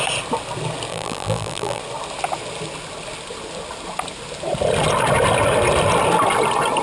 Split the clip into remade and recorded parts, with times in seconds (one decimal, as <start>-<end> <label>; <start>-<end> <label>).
0.0-0.9 recorded; 0.9-1.8 remade; 1.8-6.8 recorded